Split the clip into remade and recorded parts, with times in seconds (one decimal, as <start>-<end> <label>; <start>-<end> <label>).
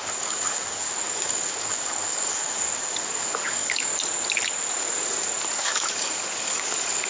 0.0-3.9 remade; 3.9-5.6 recorded; 5.6-7.1 remade